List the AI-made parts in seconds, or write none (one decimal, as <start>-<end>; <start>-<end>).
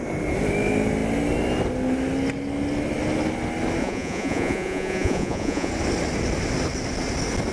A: 3.8-5.7